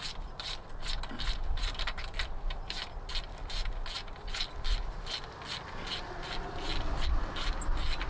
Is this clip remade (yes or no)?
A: no